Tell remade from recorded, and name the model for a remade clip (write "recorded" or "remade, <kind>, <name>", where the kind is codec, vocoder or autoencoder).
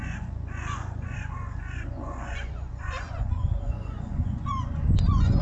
remade, vocoder, Vocos